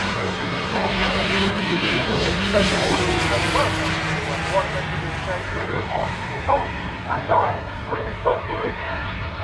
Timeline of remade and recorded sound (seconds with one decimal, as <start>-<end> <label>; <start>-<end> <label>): 0.0-3.0 remade; 3.0-5.4 recorded; 5.4-9.4 remade

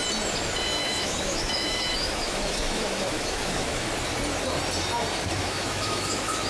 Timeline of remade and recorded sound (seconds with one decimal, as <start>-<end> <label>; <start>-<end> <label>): 0.0-0.8 recorded; 0.8-3.9 remade; 3.9-5.4 recorded; 5.4-6.5 remade

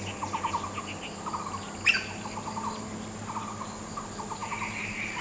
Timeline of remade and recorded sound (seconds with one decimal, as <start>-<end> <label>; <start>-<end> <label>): 0.0-5.2 recorded

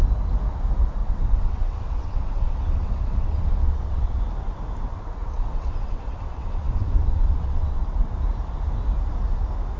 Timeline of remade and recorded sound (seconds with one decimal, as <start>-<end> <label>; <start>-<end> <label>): 0.0-1.0 recorded; 1.0-4.2 remade; 4.2-4.9 recorded; 4.9-8.2 remade; 8.2-9.8 recorded

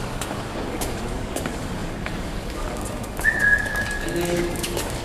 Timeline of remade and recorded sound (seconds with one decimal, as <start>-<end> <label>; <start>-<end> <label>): 0.0-5.0 remade

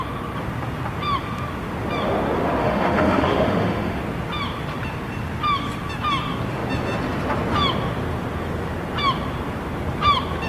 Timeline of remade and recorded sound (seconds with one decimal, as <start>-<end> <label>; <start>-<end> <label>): 0.0-2.6 recorded; 2.6-4.0 remade; 4.0-10.5 recorded